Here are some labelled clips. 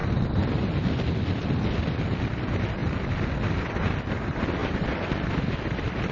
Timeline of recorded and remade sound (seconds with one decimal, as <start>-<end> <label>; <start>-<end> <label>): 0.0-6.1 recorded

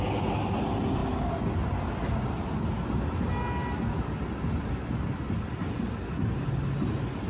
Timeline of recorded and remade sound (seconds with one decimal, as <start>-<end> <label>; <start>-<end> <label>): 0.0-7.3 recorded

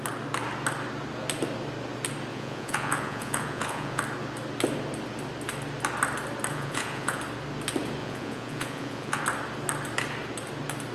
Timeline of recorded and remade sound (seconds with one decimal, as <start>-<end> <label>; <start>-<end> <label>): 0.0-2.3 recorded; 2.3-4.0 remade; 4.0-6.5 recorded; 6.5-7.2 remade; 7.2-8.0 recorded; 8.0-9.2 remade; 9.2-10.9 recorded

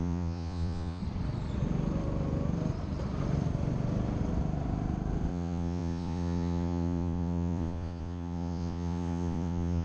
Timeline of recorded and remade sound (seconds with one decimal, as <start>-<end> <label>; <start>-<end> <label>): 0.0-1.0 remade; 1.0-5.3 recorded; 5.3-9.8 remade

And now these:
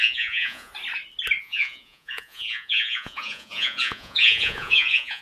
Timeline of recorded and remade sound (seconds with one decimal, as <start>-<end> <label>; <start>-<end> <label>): 0.0-0.7 remade; 0.7-1.4 recorded; 1.4-5.2 remade